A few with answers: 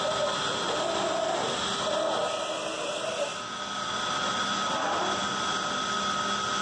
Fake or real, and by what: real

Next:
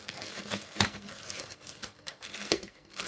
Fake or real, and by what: fake, codec, SNAC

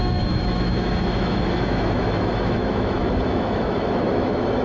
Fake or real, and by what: fake, autoencoder, DAC-VAE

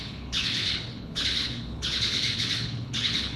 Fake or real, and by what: fake, codec, HILCodec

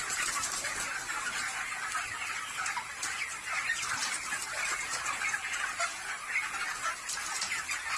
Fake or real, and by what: real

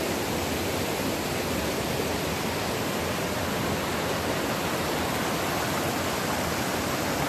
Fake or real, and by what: real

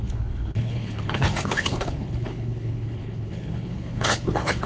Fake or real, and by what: fake, codec, HILCodec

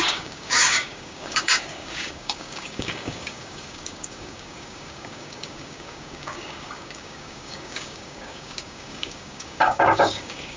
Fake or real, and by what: fake, codec, DAC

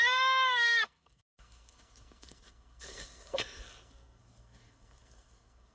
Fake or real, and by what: fake, codec, SNAC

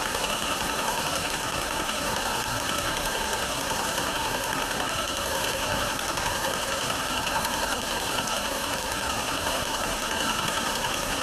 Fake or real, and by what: fake, codec, SNAC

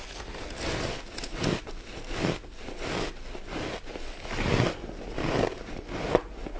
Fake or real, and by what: real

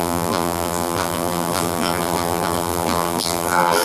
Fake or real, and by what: fake, vocoder, BigVGAN v2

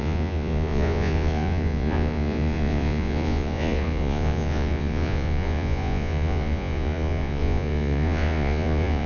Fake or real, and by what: fake, vocoder, Vocos